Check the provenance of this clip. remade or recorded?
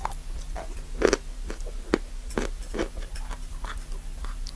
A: recorded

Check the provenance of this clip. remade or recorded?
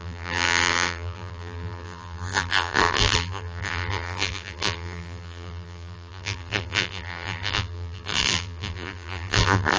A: remade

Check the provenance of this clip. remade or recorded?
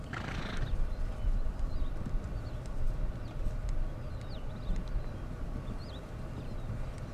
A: recorded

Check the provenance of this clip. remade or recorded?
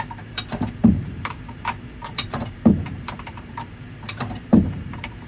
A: remade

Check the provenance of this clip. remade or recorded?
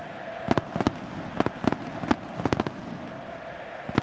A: recorded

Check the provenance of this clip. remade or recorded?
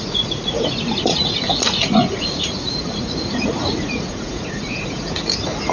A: remade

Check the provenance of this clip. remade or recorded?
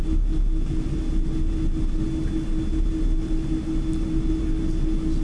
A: recorded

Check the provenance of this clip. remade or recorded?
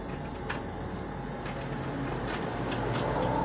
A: recorded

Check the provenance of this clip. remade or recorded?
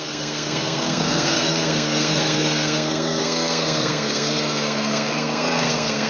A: remade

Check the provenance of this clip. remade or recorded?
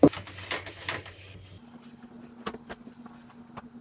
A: recorded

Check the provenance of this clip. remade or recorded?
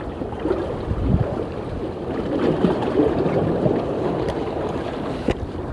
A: remade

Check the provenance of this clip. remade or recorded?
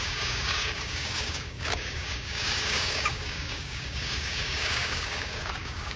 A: remade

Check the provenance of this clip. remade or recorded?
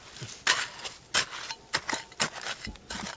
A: recorded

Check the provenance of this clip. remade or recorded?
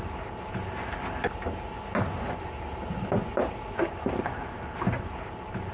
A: recorded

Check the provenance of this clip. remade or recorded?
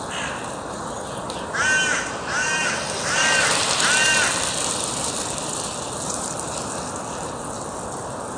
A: recorded